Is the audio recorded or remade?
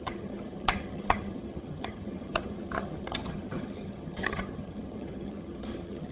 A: remade